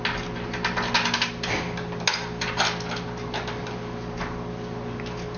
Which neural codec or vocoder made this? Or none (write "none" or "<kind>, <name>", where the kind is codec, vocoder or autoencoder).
none